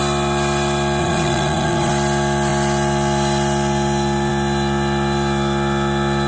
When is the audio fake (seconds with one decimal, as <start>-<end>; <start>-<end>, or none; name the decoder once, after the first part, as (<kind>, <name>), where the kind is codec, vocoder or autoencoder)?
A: 1.0-1.9 (vocoder, WaveNeXt)